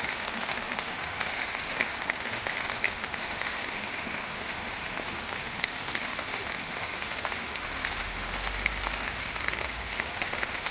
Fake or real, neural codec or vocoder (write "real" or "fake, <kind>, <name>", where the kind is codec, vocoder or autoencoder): fake, autoencoder, DAC-VAE